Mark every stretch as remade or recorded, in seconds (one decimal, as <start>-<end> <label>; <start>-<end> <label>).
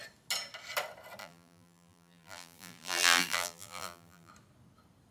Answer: 0.0-1.2 recorded; 1.2-4.3 remade; 4.3-5.1 recorded